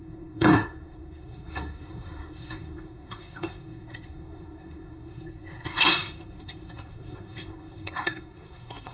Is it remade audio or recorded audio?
remade